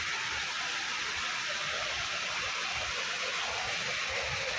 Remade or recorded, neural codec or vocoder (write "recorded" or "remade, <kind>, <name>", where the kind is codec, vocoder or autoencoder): recorded